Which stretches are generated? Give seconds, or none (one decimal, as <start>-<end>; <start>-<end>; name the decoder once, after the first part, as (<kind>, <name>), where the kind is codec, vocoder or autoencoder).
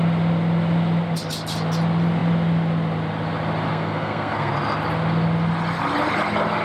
3.7-4.5 (codec, SNAC)